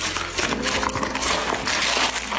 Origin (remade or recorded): recorded